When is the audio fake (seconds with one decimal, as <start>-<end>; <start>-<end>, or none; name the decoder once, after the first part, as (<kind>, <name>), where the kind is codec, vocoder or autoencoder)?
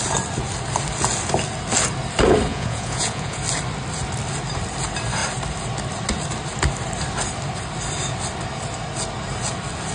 2.5-3.4 (vocoder, Vocos)